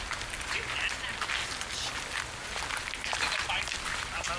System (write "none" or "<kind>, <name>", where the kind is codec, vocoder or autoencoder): none